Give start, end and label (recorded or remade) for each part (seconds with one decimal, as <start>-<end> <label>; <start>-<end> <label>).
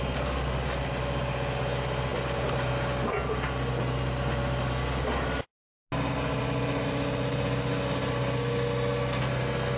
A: 0.0-9.8 recorded